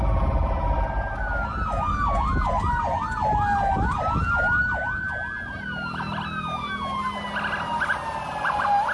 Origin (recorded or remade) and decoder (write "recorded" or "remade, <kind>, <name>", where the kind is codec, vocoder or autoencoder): recorded